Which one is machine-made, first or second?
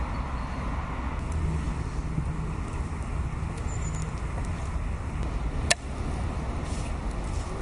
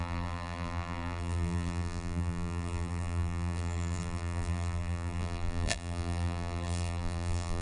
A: second